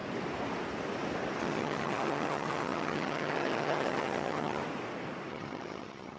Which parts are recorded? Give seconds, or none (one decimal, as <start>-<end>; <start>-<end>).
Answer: 0.0-1.4; 4.6-5.3